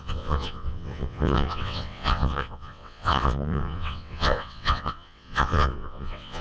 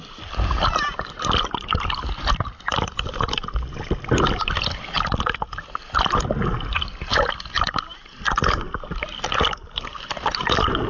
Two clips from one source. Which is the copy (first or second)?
first